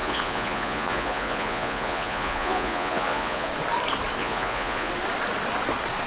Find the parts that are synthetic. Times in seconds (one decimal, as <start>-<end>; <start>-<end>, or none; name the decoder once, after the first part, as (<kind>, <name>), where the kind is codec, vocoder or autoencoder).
0.0-3.5 (vocoder, Vocos); 4.2-4.9